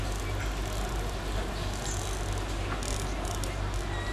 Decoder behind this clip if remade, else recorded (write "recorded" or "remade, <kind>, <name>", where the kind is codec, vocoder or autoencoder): recorded